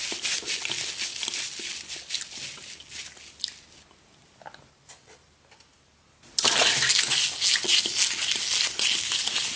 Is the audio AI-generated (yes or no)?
no